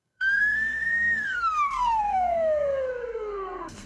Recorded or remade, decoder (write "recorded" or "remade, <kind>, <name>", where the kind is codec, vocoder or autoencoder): remade, codec, SNAC